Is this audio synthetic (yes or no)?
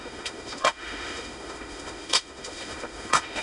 yes